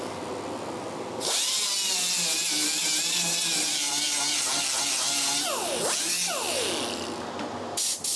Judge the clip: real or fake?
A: real